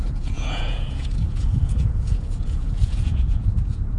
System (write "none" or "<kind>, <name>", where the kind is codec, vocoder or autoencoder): vocoder, Vocos